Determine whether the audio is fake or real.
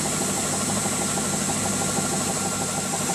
real